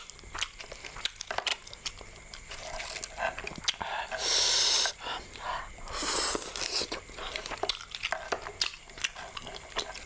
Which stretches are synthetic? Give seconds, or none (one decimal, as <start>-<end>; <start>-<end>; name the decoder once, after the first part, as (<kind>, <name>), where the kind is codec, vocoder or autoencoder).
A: none